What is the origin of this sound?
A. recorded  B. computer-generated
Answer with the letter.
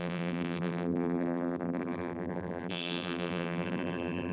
B